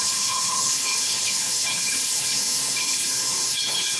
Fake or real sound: fake